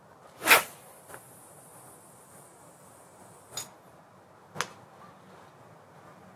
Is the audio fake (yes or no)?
no